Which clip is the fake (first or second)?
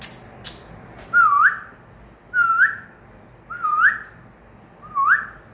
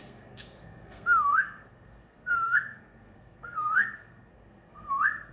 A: second